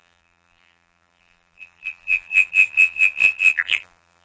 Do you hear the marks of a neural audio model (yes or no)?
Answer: yes